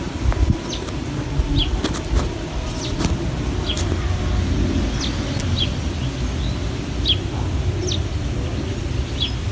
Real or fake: real